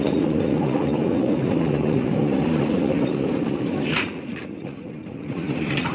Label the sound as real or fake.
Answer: fake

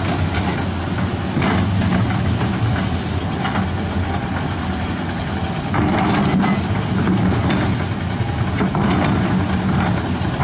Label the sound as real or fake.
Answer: real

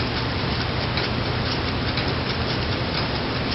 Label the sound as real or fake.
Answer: fake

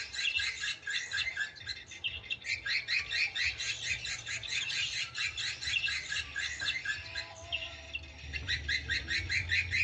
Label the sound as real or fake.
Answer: real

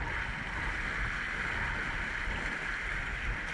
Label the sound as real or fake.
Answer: real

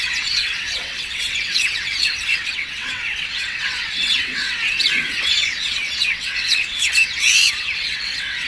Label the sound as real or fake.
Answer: fake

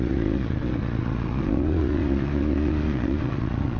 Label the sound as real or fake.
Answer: fake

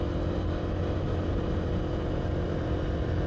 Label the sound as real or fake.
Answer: real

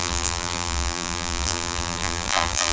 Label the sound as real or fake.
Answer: fake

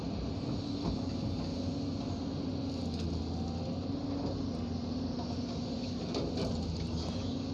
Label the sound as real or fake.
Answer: real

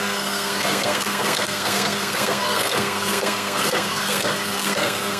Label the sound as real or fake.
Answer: fake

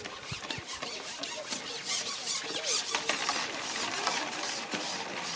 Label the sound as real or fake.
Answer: real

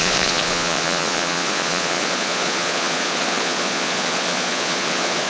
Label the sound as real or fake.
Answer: fake